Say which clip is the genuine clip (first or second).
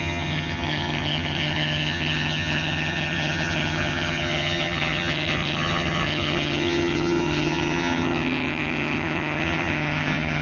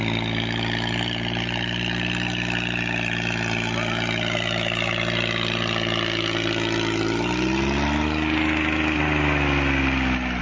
second